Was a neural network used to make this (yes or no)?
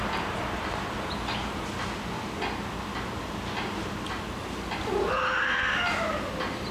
no